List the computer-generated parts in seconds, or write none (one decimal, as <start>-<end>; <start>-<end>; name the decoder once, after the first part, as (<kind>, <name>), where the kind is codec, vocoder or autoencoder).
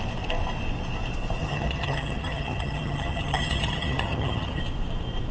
1.4-4.6 (vocoder, HiFi-GAN)